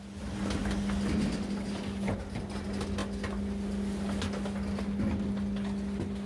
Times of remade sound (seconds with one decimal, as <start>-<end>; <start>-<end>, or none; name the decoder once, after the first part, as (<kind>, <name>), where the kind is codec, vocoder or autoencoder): none